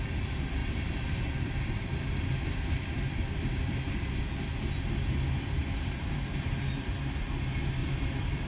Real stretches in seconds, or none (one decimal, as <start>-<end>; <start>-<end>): 0.0-0.6; 4.2-5.6; 7.0-7.8